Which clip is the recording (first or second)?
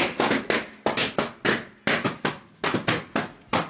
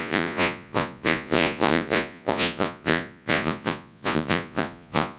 first